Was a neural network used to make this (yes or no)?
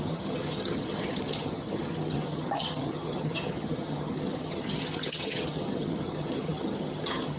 yes